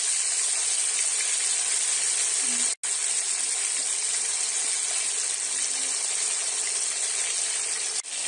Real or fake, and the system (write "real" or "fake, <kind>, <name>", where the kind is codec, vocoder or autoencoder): real